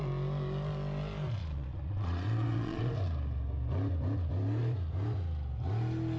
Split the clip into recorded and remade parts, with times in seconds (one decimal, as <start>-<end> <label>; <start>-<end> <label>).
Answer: 0.0-1.4 recorded; 1.4-2.9 remade; 2.9-6.2 recorded